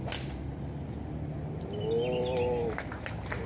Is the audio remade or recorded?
recorded